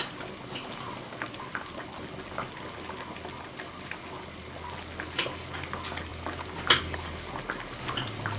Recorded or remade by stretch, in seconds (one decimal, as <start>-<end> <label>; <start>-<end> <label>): 0.0-8.4 recorded